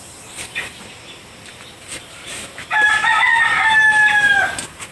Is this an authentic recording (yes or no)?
yes